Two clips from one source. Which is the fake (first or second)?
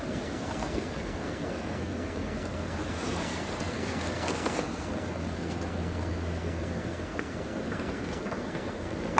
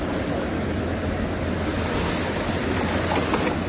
first